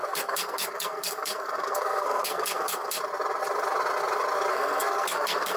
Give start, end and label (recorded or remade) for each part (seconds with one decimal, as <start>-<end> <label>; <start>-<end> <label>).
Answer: 0.0-3.0 remade; 3.0-4.5 recorded; 4.5-5.6 remade